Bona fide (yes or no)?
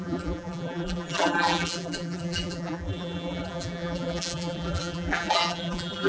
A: no